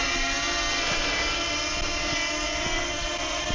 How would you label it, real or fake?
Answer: real